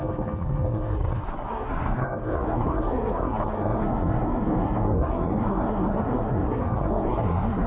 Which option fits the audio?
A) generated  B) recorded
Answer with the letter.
A